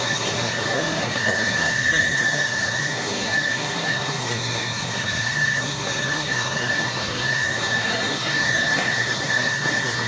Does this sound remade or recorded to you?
remade